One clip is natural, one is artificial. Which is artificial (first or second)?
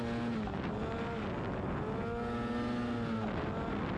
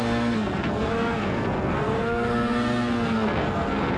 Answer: second